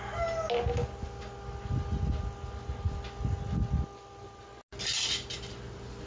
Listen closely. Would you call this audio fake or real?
real